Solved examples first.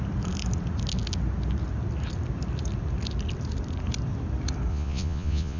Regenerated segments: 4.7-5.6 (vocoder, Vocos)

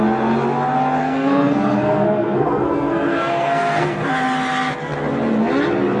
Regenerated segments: 1.0-4.1 (codec, SNAC)

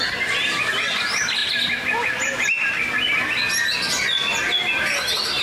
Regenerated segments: none

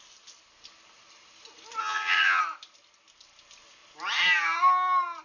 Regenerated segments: 1.8-2.4 (vocoder, HiFi-GAN)